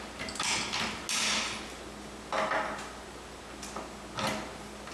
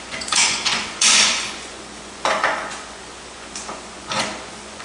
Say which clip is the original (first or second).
first